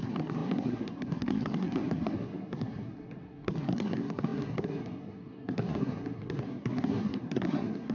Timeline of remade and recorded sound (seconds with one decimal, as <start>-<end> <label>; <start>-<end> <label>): 0.0-7.9 remade